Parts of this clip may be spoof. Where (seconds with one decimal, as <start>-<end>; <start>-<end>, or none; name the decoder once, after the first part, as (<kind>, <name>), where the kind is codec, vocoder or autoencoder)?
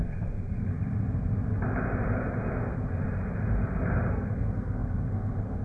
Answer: 0.0-0.7 (codec, SNAC); 4.1-5.6